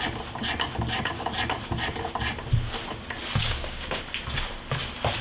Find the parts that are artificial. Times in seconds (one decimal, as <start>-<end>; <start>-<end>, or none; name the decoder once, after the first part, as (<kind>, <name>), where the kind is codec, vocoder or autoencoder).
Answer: 3.4-4.0 (codec, DAC)